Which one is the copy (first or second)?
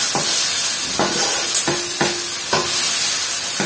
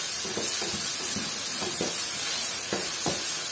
second